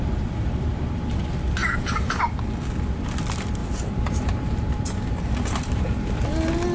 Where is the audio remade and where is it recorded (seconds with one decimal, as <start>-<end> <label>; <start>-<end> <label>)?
0.0-1.6 recorded; 1.6-2.2 remade; 2.2-3.6 recorded; 3.6-5.1 remade; 5.1-6.7 recorded